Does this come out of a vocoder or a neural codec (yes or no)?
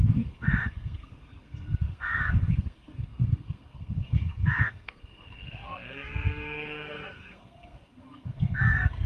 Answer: yes